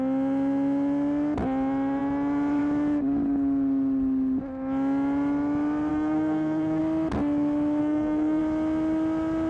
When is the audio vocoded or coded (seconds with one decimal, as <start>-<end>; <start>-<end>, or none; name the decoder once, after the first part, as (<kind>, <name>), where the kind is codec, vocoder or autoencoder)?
5.9-6.8 (codec, SNAC); 7.8-8.4

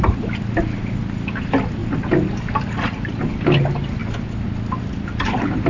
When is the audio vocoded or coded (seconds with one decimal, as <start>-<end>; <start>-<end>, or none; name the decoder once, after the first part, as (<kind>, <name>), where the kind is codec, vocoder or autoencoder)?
none

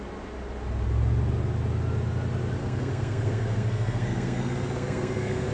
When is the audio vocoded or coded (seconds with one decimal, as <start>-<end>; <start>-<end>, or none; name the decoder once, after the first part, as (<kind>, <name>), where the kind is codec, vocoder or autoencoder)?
2.6-5.5 (codec, SNAC)

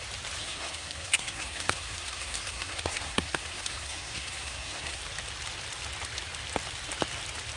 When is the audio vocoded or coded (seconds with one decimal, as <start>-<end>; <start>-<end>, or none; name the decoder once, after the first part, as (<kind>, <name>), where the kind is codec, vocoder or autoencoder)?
0.4-5.0 (codec, SNAC)

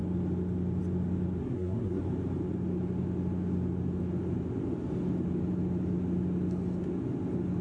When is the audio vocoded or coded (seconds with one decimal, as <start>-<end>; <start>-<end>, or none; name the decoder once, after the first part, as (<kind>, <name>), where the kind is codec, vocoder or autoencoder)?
1.4-2.0 (codec, SNAC)